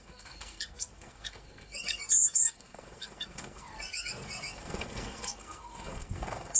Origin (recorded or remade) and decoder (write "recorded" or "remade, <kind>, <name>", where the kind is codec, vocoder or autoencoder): remade, codec, SNAC